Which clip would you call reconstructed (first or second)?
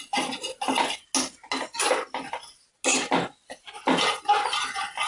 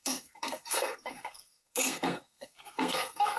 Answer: second